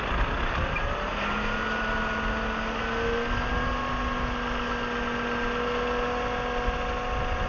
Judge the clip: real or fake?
real